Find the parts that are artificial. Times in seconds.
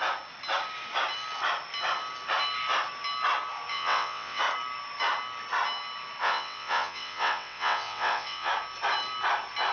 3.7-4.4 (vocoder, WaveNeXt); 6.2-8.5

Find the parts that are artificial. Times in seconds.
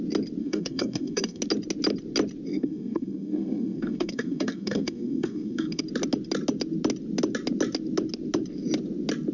0.4-1.4 (codec, SNAC); 2.5-5.8